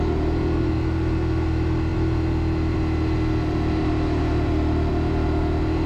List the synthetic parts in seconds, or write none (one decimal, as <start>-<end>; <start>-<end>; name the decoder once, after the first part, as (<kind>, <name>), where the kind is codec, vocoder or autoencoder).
none